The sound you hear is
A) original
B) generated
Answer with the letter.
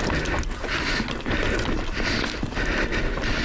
A